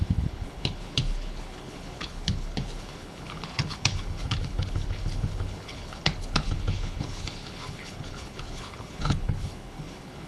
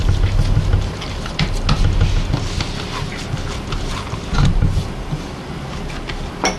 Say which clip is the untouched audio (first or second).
second